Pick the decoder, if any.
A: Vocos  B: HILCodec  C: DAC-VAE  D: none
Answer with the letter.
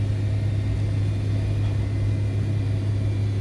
D